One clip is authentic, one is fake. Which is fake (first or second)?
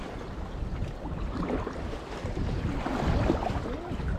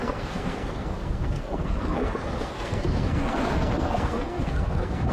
second